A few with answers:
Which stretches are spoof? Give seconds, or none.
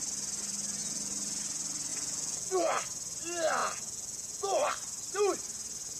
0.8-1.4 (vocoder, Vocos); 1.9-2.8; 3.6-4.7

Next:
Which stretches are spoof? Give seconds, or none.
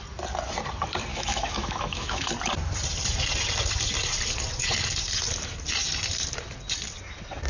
1.1-2.3 (autoencoder, DAC-VAE)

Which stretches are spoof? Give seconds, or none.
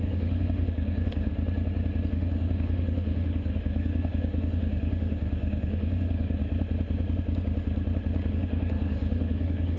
0.0-1.3 (autoencoder, DAC-VAE); 2.1-6.4; 8.3-9.8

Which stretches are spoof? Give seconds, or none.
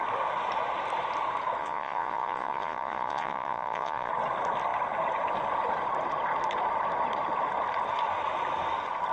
1.6-4.1 (vocoder, Vocos)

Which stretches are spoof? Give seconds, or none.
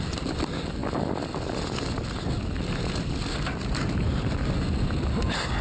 none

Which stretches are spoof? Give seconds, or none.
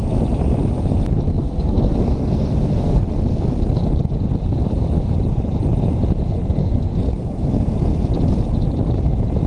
1.3-3.0 (codec, SNAC); 6.6-7.7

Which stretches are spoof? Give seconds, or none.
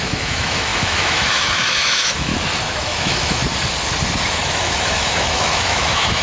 0.0-2.3 (autoencoder, DAC-VAE); 2.8-3.4; 4.3-6.2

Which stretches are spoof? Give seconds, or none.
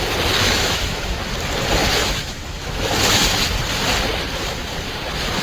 0.4-1.2 (autoencoder, DAC-VAE); 2.0-2.8